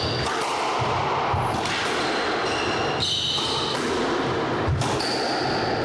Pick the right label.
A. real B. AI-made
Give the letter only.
A